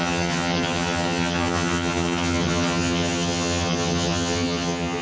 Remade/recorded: remade